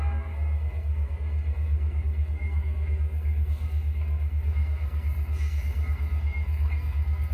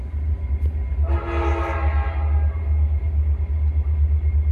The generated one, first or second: first